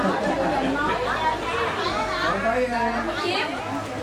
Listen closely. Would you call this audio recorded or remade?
recorded